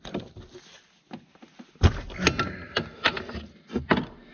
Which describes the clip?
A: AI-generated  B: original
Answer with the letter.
B